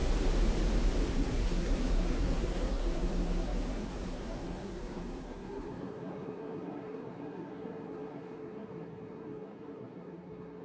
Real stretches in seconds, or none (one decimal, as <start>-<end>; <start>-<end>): 0.0-1.1